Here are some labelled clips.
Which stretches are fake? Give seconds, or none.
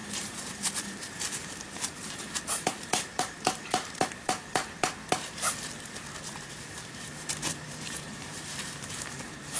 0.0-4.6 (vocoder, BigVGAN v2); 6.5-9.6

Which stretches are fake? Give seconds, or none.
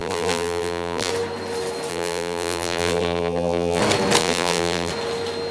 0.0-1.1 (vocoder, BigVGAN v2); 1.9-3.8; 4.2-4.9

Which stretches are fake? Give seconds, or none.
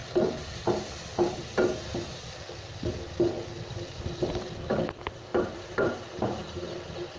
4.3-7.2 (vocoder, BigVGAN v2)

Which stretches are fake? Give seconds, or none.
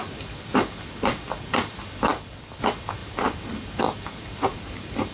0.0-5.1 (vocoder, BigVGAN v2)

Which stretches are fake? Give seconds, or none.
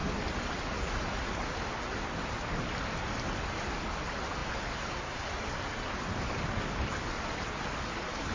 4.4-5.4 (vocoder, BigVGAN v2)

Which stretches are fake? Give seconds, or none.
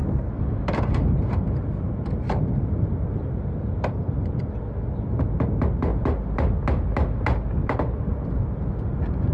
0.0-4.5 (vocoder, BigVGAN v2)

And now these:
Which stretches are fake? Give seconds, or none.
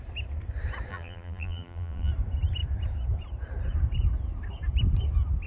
0.9-2.1 (vocoder, BigVGAN v2)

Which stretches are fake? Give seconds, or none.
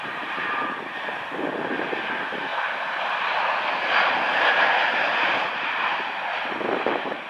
0.0-2.5 (vocoder, BigVGAN v2); 3.7-7.3